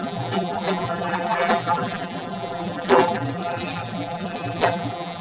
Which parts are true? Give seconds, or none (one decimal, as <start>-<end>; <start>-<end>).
none